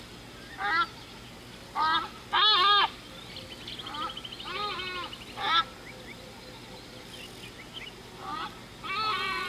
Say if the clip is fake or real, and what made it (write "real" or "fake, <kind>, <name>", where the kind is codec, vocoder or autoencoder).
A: real